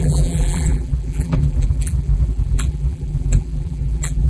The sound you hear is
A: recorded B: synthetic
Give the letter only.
B